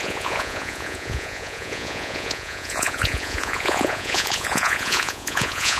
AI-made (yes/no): yes